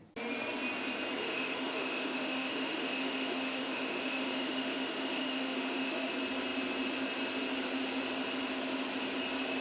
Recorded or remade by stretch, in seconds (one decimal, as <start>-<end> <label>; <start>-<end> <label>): 0.0-1.2 recorded; 1.2-6.1 remade; 6.1-9.6 recorded